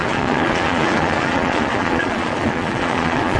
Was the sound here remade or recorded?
remade